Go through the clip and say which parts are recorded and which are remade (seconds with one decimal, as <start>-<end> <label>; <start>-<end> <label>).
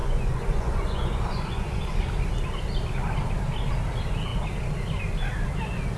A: 0.0-1.8 remade; 1.8-6.0 recorded